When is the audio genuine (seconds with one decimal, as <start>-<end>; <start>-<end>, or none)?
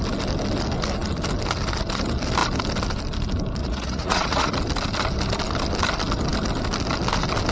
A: 0.0-3.6; 4.5-7.5